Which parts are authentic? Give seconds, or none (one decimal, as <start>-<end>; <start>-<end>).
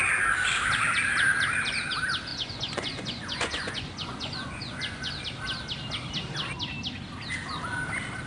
0.0-2.3; 5.1-8.3